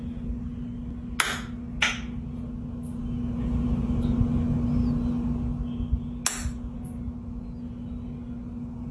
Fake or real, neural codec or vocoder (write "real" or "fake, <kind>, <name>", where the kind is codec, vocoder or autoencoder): real